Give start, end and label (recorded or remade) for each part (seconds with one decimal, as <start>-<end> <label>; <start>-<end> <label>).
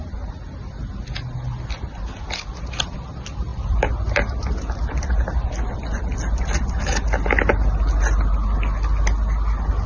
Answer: 0.0-3.5 recorded; 3.5-4.1 remade; 4.1-9.9 recorded